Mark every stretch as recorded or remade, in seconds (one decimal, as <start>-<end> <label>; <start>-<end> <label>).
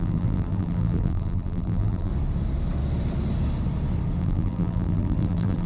0.0-2.1 remade; 2.1-4.2 recorded; 4.2-5.7 remade